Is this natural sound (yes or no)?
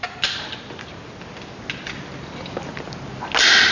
yes